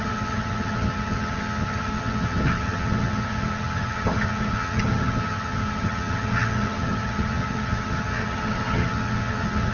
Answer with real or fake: fake